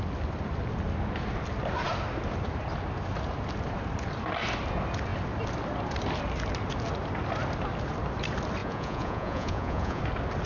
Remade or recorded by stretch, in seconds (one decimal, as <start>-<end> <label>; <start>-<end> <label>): 0.0-8.6 recorded; 8.6-10.0 remade; 10.0-10.5 recorded